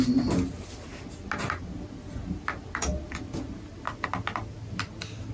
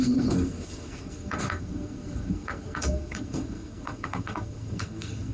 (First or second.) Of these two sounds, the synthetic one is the second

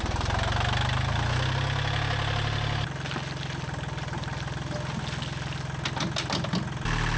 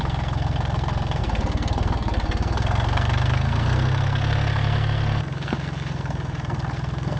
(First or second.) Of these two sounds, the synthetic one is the second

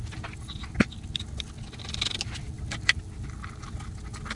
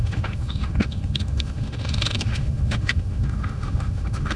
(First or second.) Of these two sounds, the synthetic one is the second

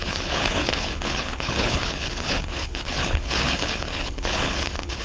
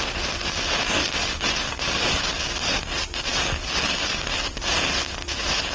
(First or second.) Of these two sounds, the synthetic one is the first